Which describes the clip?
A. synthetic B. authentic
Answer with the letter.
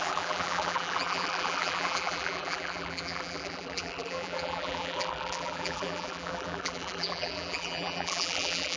A